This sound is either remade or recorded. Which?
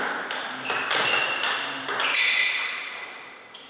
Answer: recorded